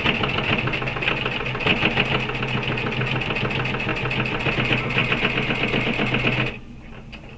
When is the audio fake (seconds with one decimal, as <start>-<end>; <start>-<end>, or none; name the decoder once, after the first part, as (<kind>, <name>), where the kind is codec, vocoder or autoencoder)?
none